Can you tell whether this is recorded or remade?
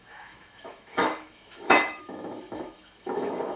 remade